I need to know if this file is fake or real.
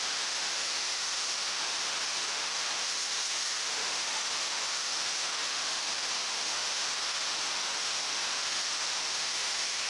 fake